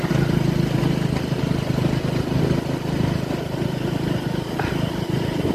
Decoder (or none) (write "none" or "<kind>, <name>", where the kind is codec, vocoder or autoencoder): none